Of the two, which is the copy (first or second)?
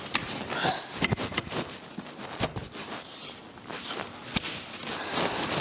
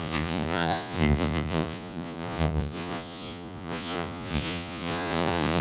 second